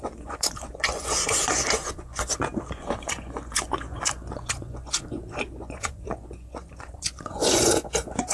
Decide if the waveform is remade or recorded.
remade